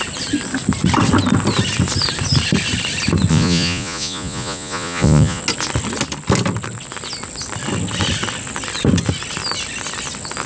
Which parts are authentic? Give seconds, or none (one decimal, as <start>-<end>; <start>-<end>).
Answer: 0.0-3.3; 5.4-10.5